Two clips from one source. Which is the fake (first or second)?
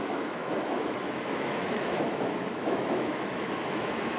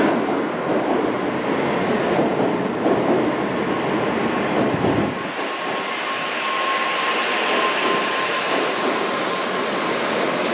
first